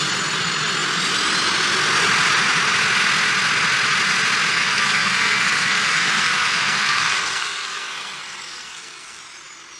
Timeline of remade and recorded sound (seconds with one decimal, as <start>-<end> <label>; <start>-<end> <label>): 0.0-4.5 recorded; 4.5-9.2 remade; 9.2-9.8 recorded